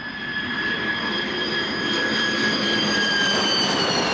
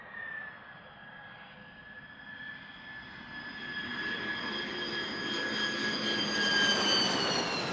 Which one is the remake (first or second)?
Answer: first